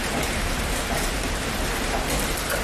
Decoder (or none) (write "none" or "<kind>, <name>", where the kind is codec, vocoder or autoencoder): none